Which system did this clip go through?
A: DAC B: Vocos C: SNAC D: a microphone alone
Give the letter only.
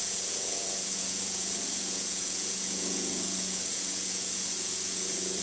B